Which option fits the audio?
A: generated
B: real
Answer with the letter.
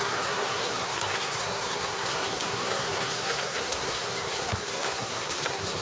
A